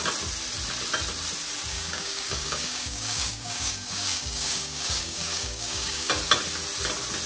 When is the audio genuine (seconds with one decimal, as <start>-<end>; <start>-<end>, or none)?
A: 0.0-1.7; 6.1-7.3